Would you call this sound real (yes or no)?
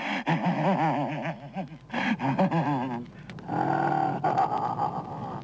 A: yes